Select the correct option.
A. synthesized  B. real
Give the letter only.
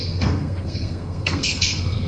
A